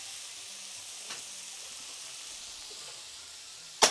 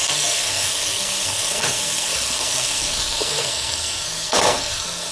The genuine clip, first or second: first